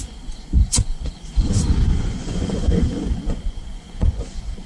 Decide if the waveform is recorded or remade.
remade